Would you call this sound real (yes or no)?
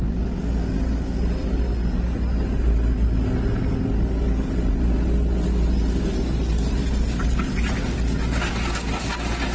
yes